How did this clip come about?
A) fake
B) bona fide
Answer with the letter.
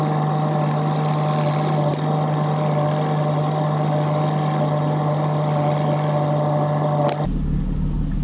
B